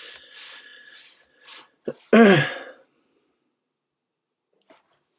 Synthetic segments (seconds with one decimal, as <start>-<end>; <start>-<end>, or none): none